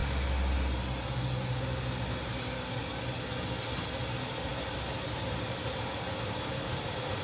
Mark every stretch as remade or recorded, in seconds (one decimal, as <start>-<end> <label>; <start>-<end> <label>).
0.0-7.2 recorded